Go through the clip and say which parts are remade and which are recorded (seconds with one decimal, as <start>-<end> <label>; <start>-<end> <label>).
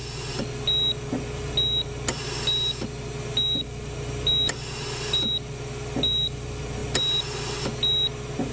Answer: 0.0-8.5 recorded